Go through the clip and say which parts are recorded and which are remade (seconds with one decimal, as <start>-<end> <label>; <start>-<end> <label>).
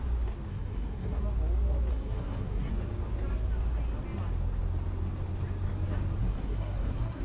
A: 0.0-0.5 recorded; 0.5-1.2 remade; 1.2-1.9 recorded; 1.9-2.7 remade; 2.7-6.2 recorded; 6.2-7.2 remade